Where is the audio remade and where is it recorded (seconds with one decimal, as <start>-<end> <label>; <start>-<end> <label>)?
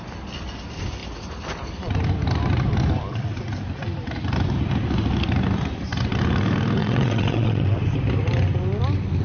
0.0-6.8 recorded; 6.8-7.8 remade; 7.8-9.2 recorded